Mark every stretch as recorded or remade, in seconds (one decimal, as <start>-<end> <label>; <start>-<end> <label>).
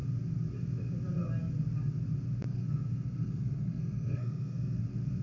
0.0-2.5 recorded; 2.5-4.8 remade; 4.8-5.2 recorded